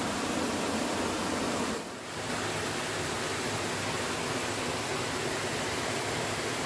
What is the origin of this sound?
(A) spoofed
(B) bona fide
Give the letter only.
B